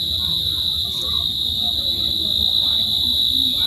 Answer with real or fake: real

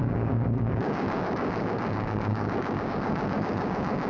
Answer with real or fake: fake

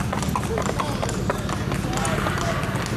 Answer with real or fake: real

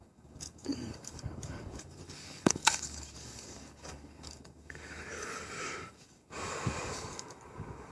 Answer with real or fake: fake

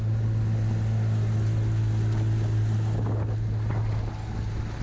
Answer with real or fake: real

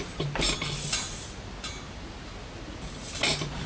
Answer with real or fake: real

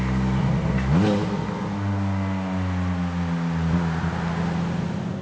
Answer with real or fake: real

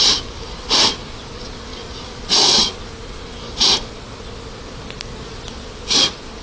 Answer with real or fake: real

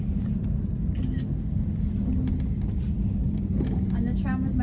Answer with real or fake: real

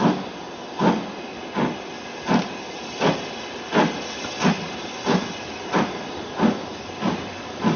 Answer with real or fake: real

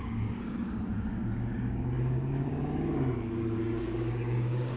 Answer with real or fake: fake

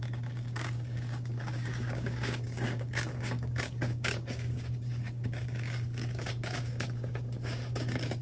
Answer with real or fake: fake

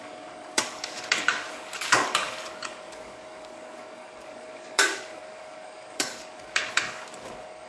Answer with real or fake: fake